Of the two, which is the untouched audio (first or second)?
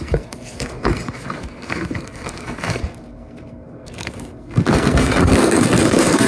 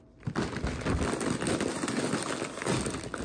second